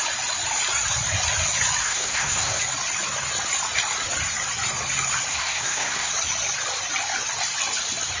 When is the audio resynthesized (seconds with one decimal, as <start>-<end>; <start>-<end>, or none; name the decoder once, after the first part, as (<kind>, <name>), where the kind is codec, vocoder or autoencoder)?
1.8-2.6 (codec, SNAC); 5.3-6.1